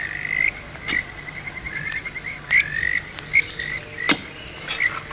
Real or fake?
real